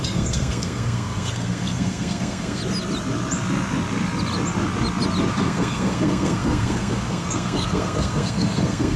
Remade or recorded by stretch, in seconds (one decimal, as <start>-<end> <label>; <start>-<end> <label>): 0.0-2.6 remade; 2.6-5.3 recorded; 5.3-9.0 remade